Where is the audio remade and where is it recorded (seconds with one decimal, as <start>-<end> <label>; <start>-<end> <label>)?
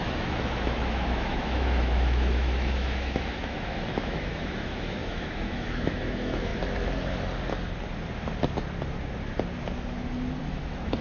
0.0-6.5 remade; 6.5-10.4 recorded; 10.4-11.0 remade